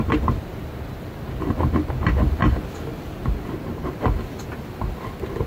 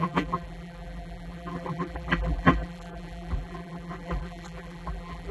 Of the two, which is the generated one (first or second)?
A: second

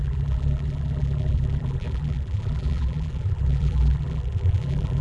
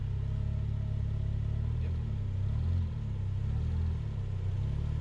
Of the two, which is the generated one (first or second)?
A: first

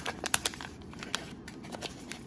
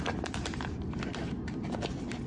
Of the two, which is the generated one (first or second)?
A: first